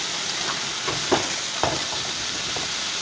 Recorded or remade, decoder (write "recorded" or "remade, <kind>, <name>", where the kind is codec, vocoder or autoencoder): recorded